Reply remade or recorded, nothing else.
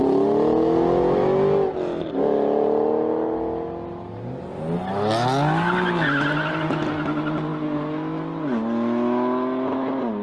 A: recorded